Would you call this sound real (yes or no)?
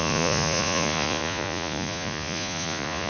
no